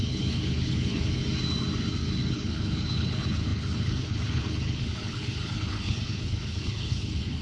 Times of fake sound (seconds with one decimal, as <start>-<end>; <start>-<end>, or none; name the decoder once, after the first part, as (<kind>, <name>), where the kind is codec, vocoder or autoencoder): 0.0-1.2 (codec, HILCodec); 2.2-7.4